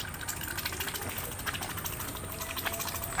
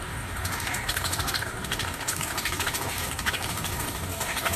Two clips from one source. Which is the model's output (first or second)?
second